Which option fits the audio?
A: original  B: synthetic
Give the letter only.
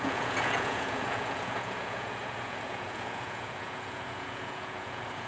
B